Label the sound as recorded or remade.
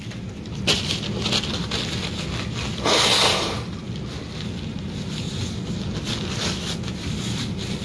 recorded